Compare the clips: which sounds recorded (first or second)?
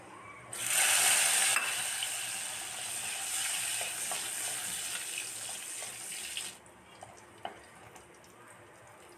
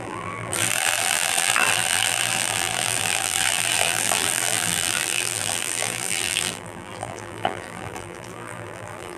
first